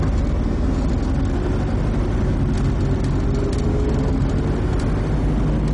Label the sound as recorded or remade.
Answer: recorded